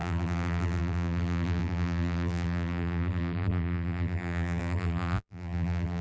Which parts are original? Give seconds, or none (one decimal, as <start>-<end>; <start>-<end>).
none